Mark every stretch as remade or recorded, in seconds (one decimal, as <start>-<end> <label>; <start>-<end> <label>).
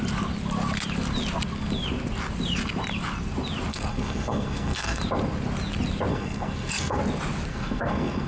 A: 0.0-3.7 recorded; 3.7-5.0 remade; 5.0-6.1 recorded; 6.1-7.0 remade; 7.0-7.5 recorded; 7.5-8.3 remade